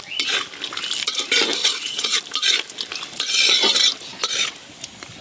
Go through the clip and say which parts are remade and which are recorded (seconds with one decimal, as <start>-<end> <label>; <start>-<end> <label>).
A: 0.0-1.6 recorded; 1.6-2.2 remade; 2.2-5.2 recorded